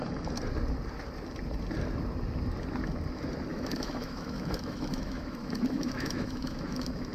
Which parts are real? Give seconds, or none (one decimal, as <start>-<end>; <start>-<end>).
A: 0.0-3.5